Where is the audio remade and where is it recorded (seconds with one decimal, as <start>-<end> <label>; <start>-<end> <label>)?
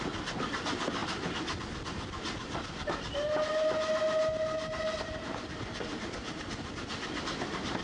0.0-7.8 recorded